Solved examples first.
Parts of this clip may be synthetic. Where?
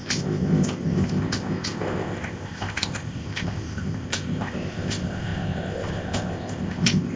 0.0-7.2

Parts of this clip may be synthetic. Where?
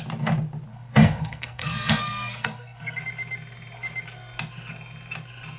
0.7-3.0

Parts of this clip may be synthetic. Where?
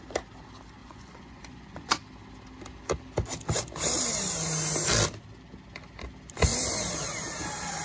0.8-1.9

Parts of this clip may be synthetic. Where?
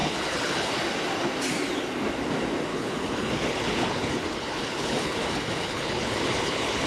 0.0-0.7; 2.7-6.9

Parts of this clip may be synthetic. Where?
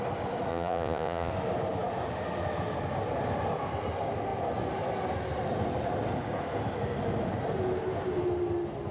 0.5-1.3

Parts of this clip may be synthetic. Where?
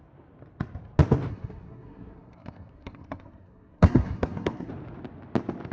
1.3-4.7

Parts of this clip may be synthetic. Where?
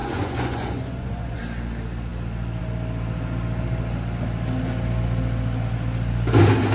0.0-1.4